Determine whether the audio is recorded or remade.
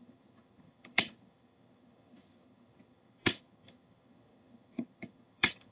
remade